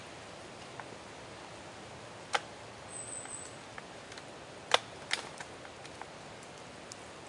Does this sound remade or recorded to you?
recorded